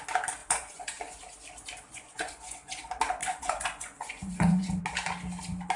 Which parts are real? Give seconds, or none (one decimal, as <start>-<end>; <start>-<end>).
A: 0.0-0.4; 1.2-1.9; 2.8-3.2; 4.8-5.8